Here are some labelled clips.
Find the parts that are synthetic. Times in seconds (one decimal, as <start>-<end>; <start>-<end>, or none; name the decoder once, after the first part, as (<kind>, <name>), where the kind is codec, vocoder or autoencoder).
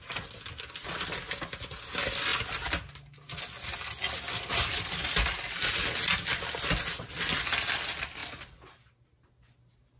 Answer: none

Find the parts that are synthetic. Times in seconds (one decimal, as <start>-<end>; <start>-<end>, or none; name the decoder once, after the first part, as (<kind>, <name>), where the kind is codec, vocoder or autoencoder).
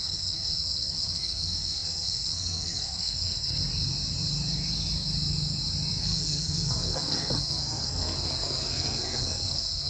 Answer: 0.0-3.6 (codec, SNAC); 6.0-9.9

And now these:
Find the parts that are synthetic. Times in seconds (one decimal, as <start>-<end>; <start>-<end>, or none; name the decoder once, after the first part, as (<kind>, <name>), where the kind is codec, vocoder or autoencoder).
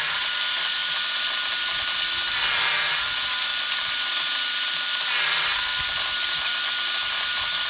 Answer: none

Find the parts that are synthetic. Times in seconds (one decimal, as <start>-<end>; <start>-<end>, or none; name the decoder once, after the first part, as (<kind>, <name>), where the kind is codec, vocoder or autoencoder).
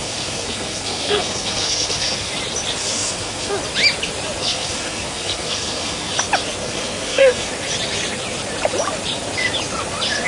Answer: 0.0-2.3 (codec, SNAC); 2.8-3.5; 4.4-6.1; 6.6-7.5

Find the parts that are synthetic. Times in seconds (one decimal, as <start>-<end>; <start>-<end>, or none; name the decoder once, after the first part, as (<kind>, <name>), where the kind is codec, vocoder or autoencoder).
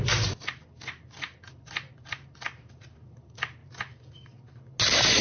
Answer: 0.0-3.6 (vocoder, BigVGAN v2)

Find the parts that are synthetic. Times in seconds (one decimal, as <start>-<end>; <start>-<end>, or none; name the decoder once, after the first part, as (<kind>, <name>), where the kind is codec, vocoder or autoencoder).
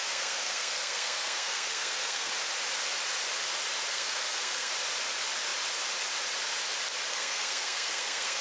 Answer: 0.0-2.3 (codec, SNAC); 3.9-4.7; 7.1-8.4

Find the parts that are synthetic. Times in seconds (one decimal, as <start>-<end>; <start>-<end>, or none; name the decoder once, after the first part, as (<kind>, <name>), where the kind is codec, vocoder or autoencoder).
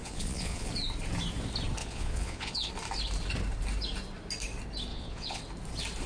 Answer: 0.0-0.7 (vocoder, Vocos); 1.8-2.7; 4.9-5.4